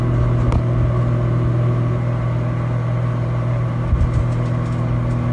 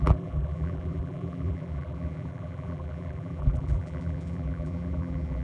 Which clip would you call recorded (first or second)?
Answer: first